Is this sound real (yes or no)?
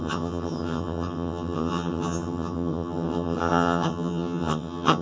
no